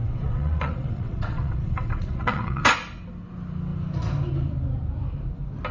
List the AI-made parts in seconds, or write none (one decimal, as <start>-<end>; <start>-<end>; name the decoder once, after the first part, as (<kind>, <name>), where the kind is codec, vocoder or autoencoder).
0.0-2.6 (vocoder, WaveNeXt)